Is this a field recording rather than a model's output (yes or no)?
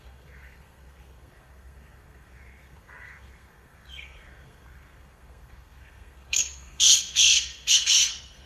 no